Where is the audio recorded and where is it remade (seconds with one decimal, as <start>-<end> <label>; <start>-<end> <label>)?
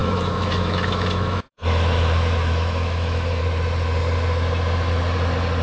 0.0-3.4 remade; 3.4-5.6 recorded